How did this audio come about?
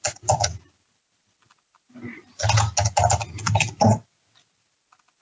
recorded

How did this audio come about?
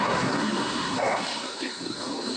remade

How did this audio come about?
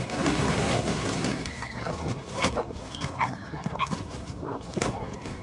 remade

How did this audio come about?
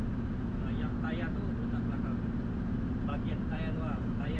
recorded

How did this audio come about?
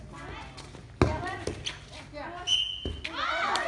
recorded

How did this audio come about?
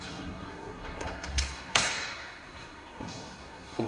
remade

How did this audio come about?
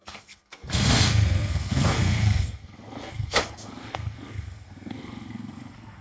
remade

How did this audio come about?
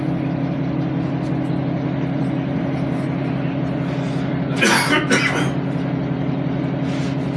recorded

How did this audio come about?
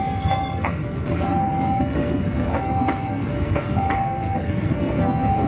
remade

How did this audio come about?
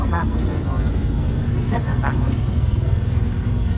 remade